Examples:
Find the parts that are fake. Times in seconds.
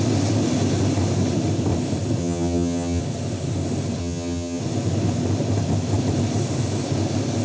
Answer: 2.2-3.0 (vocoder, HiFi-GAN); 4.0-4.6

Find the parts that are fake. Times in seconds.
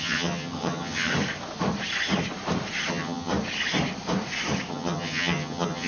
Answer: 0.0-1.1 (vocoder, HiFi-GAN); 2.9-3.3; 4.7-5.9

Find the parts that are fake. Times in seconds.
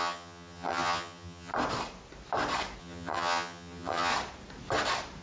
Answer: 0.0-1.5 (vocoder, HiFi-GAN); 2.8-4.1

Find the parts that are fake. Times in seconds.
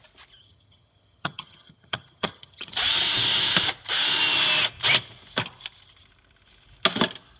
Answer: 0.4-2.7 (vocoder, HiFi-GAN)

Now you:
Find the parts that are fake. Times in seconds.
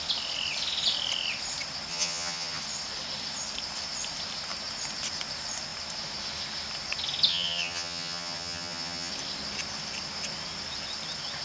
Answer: 1.9-2.6 (vocoder, HiFi-GAN); 7.3-9.1